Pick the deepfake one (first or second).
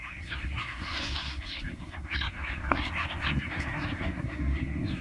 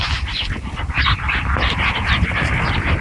first